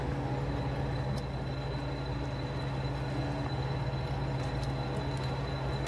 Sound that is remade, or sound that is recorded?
recorded